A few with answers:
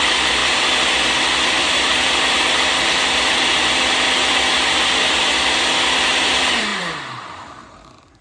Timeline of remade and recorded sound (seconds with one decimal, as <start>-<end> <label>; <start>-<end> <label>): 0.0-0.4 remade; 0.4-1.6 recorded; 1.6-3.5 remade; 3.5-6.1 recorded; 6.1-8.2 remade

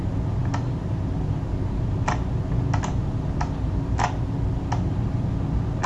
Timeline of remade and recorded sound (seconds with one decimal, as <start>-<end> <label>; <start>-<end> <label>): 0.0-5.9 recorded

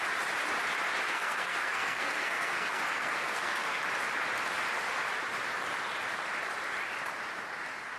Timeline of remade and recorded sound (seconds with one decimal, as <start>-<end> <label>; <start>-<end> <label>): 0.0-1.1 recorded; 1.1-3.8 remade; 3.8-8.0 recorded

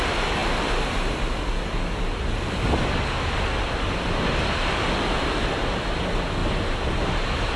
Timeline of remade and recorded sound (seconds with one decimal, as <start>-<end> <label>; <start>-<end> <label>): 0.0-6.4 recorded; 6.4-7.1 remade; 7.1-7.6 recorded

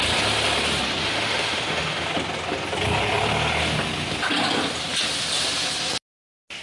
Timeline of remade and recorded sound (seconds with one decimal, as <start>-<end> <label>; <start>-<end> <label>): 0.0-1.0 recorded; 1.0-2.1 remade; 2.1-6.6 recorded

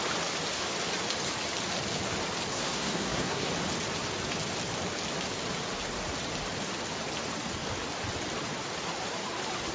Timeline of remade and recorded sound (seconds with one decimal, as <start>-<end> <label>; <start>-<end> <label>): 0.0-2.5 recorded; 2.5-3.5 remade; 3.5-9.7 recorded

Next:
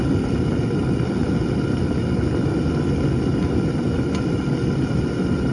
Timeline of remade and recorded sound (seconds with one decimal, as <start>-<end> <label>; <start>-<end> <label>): 0.0-5.5 recorded

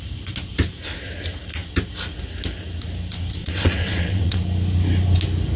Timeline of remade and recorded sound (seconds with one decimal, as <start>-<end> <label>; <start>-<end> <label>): 0.0-3.4 recorded; 3.4-4.4 remade; 4.4-5.6 recorded